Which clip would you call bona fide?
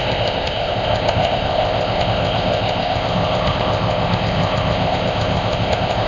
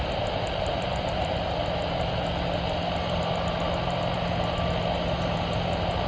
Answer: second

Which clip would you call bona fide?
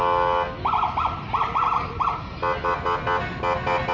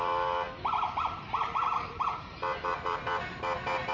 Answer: first